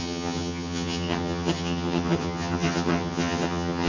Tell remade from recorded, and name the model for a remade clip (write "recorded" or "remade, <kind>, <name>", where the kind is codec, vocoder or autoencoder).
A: remade, vocoder, HiFi-GAN